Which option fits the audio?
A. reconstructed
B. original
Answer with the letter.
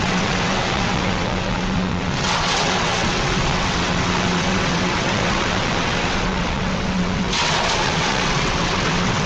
A